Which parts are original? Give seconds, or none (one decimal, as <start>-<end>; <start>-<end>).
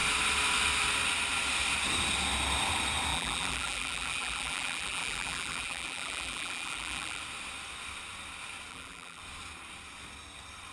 0.0-3.1; 7.2-8.7; 9.2-10.7